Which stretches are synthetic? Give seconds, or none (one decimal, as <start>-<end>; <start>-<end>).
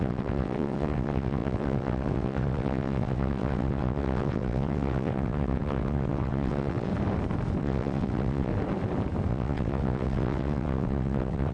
0.0-6.9; 7.6-8.5; 9.3-11.5